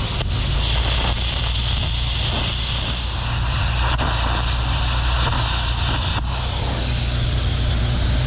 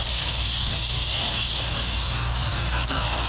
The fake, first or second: second